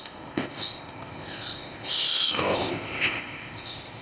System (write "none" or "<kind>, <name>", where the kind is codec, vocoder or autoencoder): codec, ZipCodec